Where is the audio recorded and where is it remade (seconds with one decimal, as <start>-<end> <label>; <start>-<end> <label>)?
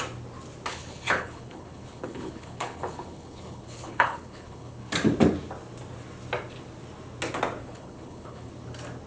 0.0-0.7 recorded; 0.7-4.9 remade; 4.9-7.6 recorded; 7.6-8.5 remade; 8.5-9.1 recorded